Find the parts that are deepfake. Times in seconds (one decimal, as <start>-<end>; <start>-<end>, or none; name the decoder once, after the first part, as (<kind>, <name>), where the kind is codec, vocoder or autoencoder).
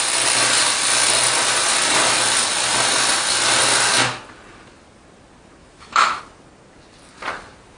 5.6-6.2 (autoencoder, DAC-VAE)